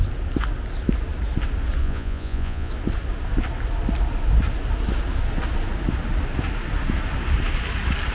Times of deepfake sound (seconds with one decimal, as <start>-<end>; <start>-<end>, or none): 1.8-2.7